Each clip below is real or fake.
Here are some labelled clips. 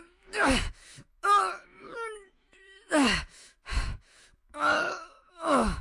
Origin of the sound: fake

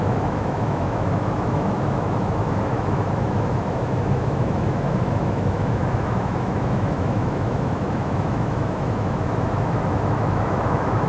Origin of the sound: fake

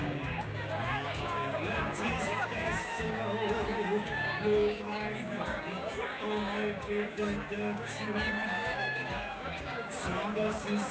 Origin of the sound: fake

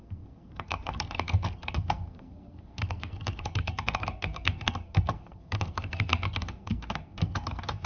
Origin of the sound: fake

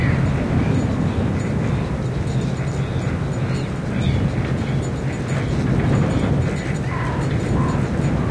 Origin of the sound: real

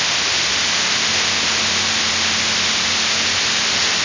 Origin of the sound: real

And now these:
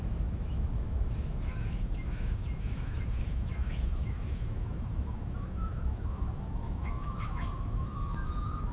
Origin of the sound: fake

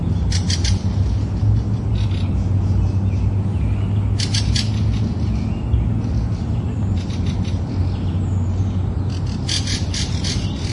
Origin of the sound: real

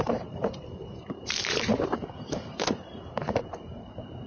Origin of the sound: fake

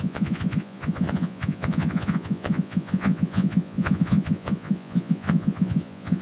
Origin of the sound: fake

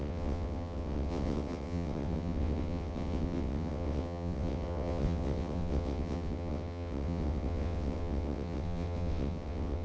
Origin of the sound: fake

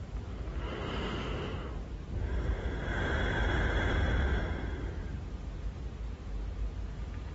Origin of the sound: real